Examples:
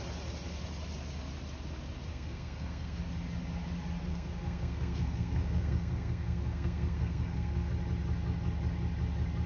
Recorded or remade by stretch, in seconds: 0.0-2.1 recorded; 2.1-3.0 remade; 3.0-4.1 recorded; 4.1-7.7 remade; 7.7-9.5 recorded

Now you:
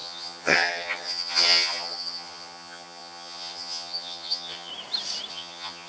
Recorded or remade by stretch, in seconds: 0.0-4.7 remade; 4.7-5.3 recorded; 5.3-5.9 remade

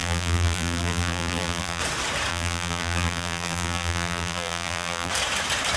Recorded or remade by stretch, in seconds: 0.0-1.8 remade; 1.8-2.3 recorded; 2.3-5.1 remade; 5.1-5.8 recorded